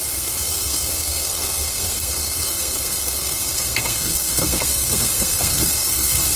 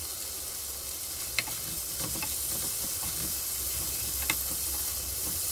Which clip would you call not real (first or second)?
first